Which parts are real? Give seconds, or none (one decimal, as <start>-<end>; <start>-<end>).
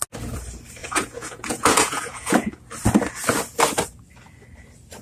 0.0-0.8; 2.5-5.0